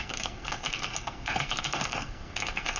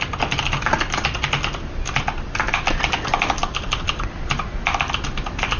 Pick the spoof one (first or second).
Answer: first